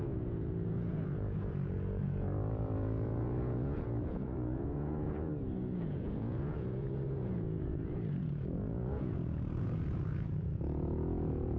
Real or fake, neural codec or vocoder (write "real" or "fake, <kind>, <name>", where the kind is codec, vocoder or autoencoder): fake, vocoder, Vocos